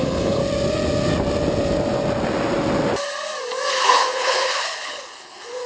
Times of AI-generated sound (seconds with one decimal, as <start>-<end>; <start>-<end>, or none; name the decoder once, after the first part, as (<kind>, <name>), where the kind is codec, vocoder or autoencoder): 0.0-0.4 (codec, HILCodec); 3.7-5.7